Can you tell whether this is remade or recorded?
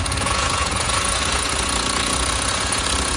remade